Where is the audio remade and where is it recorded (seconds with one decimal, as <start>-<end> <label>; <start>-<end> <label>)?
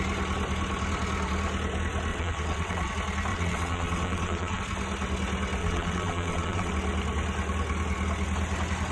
0.0-2.1 recorded; 2.1-2.9 remade; 2.9-3.3 recorded; 3.3-4.6 remade; 4.6-5.6 recorded; 5.6-6.7 remade; 6.7-8.9 recorded